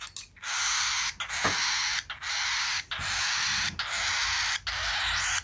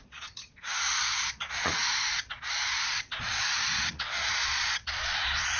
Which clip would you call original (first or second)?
first